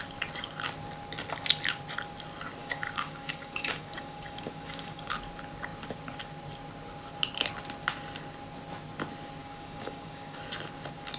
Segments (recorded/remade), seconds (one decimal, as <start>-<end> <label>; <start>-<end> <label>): 0.0-2.6 recorded; 2.6-5.1 remade; 5.1-9.4 recorded; 9.4-10.4 remade; 10.4-11.2 recorded